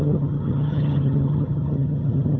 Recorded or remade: remade